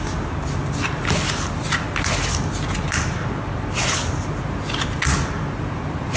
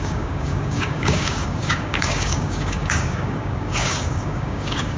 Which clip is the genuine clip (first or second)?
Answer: first